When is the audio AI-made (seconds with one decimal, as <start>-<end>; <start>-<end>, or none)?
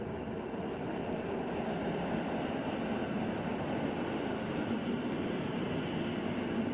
3.0-3.6; 4.8-5.5